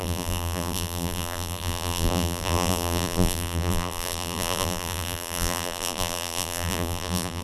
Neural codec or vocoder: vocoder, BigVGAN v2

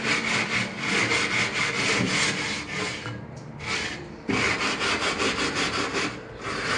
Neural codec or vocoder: none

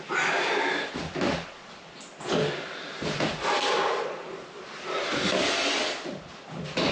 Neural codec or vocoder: none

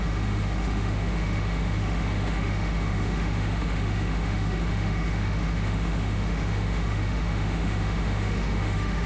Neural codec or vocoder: autoencoder, DAC-VAE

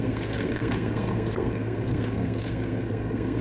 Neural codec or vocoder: codec, SNAC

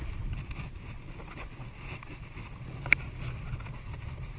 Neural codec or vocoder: none